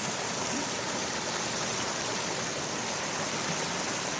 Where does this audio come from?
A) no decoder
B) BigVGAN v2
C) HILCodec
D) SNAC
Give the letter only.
A